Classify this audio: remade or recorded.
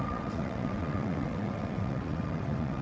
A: remade